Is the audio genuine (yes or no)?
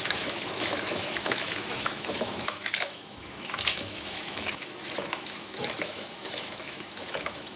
no